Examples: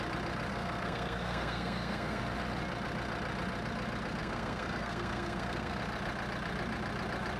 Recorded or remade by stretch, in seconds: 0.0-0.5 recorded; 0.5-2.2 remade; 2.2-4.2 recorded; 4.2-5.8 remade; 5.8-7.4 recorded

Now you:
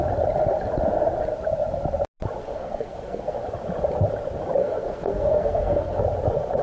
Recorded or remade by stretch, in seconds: 0.0-2.4 recorded; 2.4-3.4 remade; 3.4-4.6 recorded; 4.6-6.0 remade; 6.0-6.6 recorded

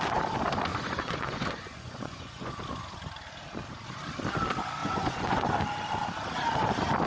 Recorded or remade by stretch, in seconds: 0.0-0.7 recorded; 0.7-2.6 remade; 2.6-4.8 recorded; 4.8-5.4 remade; 5.4-7.1 recorded